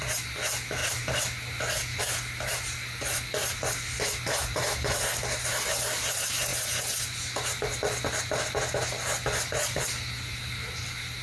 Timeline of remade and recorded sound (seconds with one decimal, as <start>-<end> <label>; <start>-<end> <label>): 0.0-11.2 recorded